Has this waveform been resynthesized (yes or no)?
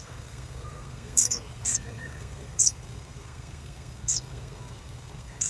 yes